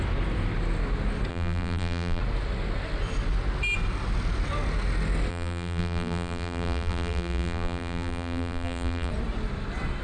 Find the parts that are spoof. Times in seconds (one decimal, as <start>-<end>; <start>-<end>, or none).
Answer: 1.3-2.2; 5.3-9.1